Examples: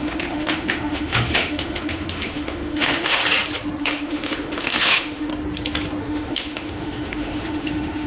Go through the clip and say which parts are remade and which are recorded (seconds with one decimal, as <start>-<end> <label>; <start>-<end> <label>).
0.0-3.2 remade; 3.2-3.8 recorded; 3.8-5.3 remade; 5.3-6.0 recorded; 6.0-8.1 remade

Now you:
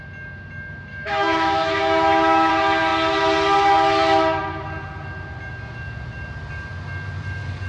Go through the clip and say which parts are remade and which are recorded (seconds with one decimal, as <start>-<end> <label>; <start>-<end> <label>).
0.0-0.9 recorded; 0.9-2.5 remade; 2.5-7.7 recorded

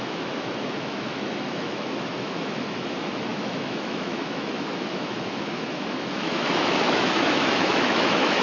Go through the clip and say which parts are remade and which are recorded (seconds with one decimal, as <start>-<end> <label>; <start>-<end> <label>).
0.0-8.4 remade